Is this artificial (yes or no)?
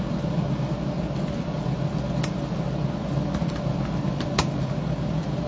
no